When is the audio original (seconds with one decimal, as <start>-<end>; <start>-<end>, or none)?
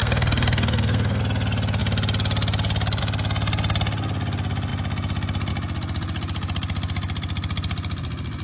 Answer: 1.2-8.4